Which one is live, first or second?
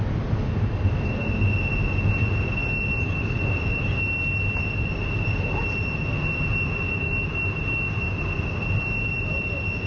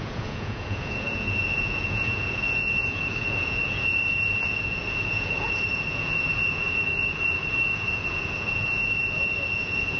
first